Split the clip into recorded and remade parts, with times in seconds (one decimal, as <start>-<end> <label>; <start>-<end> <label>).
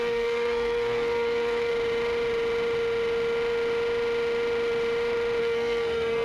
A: 0.0-1.7 remade; 1.7-5.4 recorded; 5.4-6.2 remade